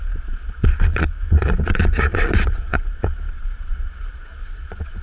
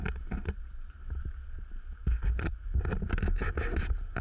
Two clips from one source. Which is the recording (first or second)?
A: second